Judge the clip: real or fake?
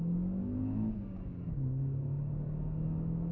fake